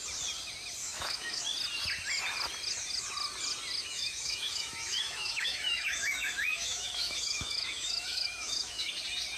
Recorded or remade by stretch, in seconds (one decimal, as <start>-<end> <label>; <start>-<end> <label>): 0.0-0.8 recorded; 0.8-1.4 remade; 1.4-3.8 recorded; 3.8-8.9 remade; 8.9-9.4 recorded